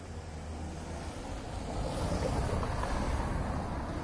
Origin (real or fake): real